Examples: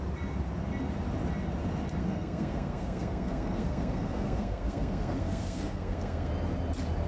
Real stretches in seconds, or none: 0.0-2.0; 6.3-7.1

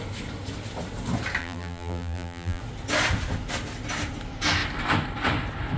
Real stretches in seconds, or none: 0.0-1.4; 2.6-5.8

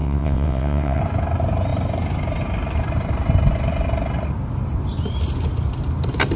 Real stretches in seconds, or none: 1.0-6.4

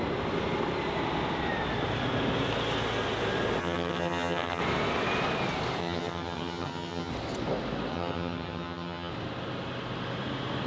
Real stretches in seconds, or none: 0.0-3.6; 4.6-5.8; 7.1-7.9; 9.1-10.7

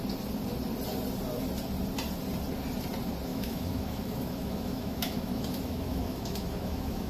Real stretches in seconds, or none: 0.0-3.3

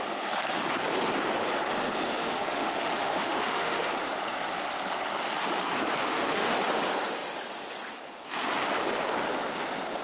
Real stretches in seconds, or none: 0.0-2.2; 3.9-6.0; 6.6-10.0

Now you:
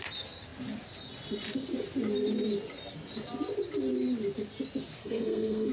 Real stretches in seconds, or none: 0.0-5.0

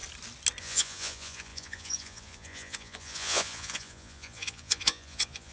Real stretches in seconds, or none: 0.0-0.6